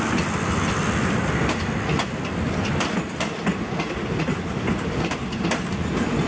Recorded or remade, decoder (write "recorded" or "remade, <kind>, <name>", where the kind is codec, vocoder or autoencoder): recorded